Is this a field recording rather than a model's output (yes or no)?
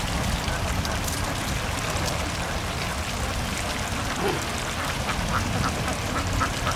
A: yes